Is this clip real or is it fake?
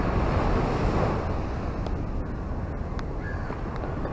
real